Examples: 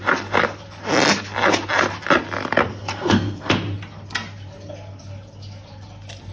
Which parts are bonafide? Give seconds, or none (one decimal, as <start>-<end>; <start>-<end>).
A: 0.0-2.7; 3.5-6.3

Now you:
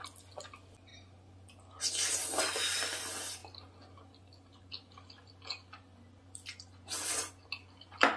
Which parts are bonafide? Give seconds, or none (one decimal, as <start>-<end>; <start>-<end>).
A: 0.0-8.2

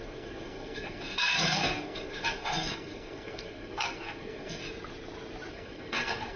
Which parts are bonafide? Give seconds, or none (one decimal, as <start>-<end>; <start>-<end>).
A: 4.6-5.5

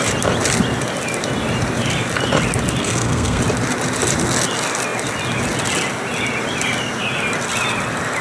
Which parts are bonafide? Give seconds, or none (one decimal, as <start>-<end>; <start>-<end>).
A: 0.0-2.8; 3.4-8.2

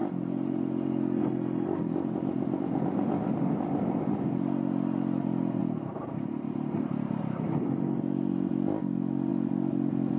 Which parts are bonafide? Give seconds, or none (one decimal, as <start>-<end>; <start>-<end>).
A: 0.0-10.2

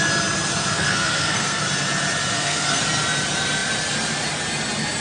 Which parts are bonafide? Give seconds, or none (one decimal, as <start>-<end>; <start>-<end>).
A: 0.0-0.7; 1.6-2.3; 2.8-5.0

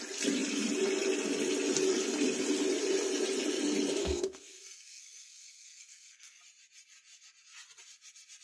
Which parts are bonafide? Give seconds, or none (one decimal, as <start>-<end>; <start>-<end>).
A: 0.0-4.0; 6.4-8.4

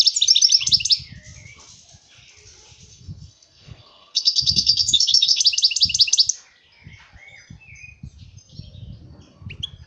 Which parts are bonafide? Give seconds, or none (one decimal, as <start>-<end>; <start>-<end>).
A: 0.0-2.9; 5.4-9.9